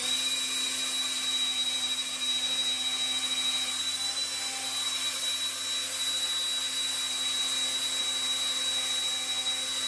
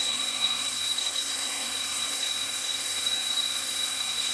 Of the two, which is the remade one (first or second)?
second